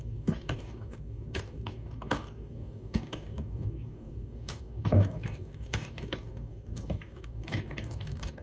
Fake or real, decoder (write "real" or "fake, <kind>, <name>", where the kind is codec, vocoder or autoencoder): fake, codec, DAC